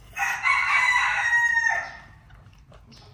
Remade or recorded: recorded